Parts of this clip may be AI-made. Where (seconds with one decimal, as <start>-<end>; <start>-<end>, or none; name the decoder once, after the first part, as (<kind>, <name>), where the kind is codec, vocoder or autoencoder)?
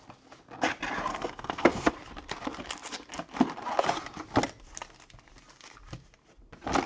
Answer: 1.1-1.9 (codec, SNAC)